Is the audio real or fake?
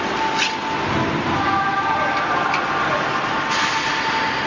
real